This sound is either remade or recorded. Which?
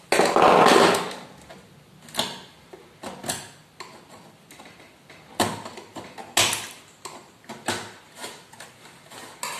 recorded